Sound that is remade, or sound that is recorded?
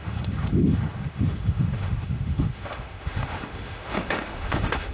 remade